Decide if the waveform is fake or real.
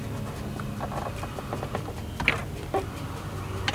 fake